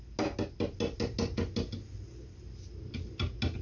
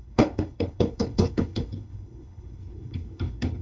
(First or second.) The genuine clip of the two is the first